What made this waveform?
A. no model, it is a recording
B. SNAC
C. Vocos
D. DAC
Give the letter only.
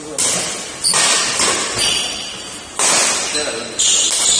A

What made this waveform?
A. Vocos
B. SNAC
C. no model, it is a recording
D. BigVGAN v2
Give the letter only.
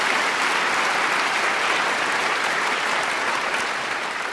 C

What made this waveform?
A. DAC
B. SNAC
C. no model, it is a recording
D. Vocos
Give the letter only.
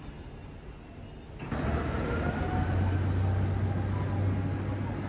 C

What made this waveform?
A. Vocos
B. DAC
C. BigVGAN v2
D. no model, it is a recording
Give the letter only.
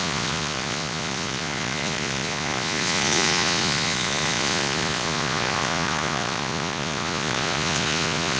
A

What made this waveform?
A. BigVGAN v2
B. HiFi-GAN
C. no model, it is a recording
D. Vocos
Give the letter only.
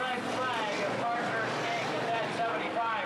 C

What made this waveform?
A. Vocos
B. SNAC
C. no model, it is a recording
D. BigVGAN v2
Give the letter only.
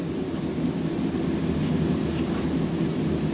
C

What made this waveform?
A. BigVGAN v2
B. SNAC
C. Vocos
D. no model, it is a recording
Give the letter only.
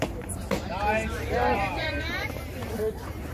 A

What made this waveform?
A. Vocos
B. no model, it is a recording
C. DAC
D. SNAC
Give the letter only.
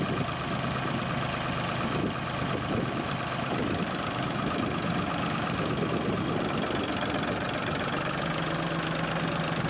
B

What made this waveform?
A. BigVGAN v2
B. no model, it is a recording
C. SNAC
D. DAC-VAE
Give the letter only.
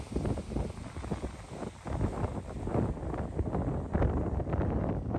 B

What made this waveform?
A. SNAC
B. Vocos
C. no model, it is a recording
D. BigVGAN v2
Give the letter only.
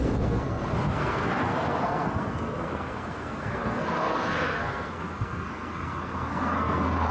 A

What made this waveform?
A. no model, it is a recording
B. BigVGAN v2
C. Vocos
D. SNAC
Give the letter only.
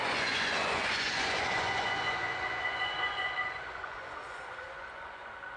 C